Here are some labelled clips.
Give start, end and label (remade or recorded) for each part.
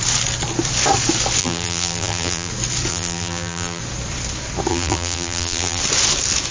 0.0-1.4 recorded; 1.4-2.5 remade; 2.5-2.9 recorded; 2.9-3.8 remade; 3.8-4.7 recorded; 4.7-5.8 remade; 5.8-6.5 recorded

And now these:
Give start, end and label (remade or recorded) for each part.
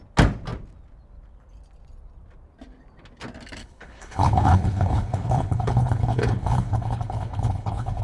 0.0-3.6 recorded; 3.6-8.0 remade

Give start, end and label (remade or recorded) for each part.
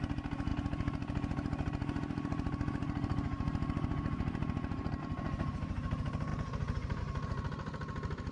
0.0-8.3 recorded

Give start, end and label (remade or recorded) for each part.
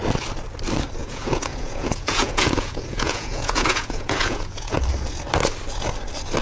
0.0-1.0 recorded; 1.0-4.8 remade; 4.8-6.4 recorded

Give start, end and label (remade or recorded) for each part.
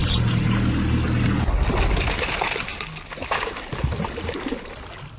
0.0-5.2 recorded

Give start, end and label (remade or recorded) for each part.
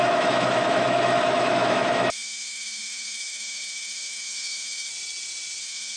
0.0-4.9 remade; 4.9-5.6 recorded; 5.6-6.0 remade